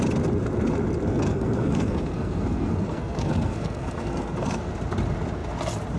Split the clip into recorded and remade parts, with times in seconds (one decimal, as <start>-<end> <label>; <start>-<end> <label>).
0.0-1.1 recorded; 1.1-4.7 remade; 4.7-6.0 recorded